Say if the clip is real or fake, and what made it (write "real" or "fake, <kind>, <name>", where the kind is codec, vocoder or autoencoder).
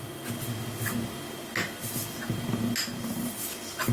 real